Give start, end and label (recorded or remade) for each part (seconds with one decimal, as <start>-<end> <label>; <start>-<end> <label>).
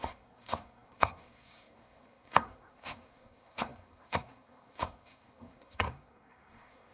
0.0-6.9 remade